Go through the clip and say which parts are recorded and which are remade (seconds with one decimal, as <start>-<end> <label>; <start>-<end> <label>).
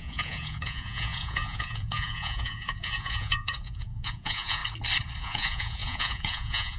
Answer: 0.0-4.6 remade; 4.6-5.2 recorded; 5.2-6.8 remade